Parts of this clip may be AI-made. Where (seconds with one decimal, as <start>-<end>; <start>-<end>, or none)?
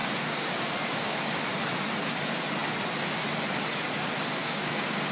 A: 0.0-1.3; 4.4-5.1